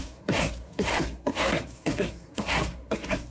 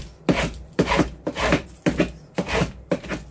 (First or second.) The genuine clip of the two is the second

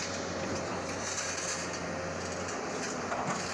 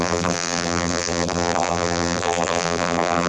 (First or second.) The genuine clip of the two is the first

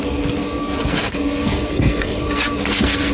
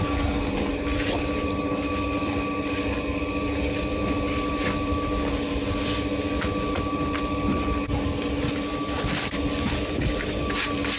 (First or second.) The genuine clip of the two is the second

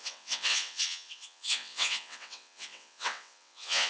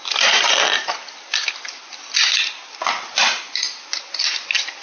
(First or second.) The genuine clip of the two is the second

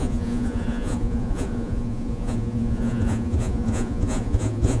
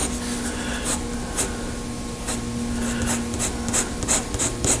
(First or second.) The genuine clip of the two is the second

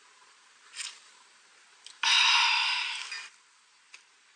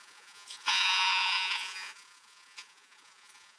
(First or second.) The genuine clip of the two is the first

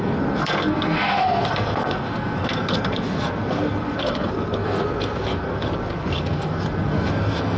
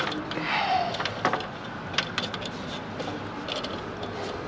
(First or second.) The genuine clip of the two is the second